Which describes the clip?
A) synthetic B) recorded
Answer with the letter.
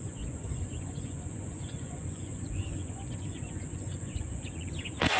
A